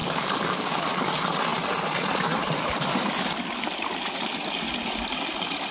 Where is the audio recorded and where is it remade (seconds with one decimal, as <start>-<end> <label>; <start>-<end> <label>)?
0.0-1.1 remade; 1.1-5.7 recorded